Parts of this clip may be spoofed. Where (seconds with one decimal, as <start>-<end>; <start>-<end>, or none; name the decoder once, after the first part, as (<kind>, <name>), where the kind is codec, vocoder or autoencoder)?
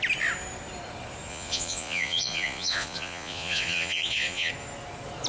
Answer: 1.3-4.5 (vocoder, Vocos)